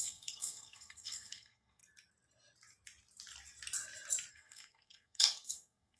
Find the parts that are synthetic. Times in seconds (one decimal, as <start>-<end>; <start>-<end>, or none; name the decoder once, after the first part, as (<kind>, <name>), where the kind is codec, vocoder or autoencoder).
0.0-1.8 (codec, SNAC); 4.3-6.0